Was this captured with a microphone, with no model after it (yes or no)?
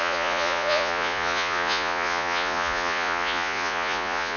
no